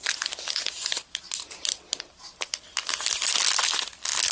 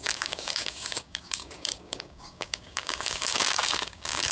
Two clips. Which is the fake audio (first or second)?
second